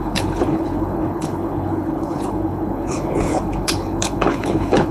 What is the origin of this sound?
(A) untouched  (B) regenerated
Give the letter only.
B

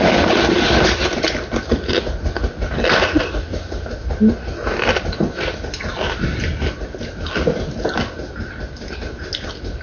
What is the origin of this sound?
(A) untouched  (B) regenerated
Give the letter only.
A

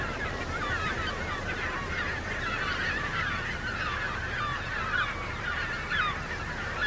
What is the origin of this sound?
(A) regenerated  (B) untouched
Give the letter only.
B